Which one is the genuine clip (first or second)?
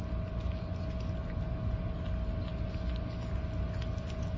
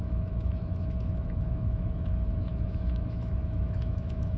first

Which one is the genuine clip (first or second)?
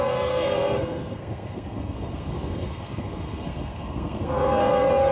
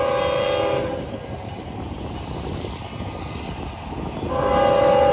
second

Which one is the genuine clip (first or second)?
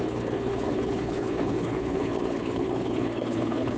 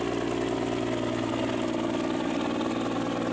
second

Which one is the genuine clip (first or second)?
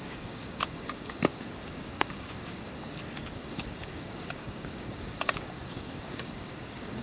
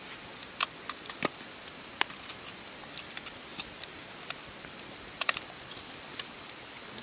second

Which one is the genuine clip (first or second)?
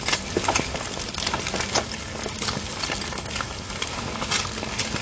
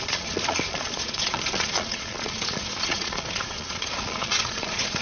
first